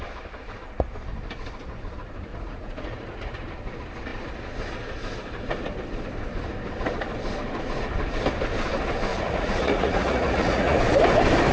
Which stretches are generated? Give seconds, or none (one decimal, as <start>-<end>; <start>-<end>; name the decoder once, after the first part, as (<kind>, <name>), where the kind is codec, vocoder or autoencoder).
2.3-3.3 (vocoder, Vocos); 9.1-10.8

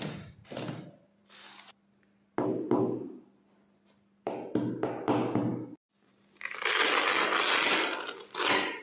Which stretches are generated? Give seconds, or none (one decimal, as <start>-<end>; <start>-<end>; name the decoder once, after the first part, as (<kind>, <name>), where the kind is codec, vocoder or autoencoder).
none